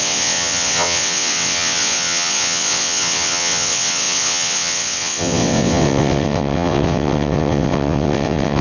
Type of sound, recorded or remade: remade